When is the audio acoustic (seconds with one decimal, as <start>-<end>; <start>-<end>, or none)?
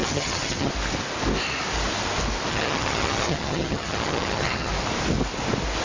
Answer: 0.7-2.5; 4.7-5.8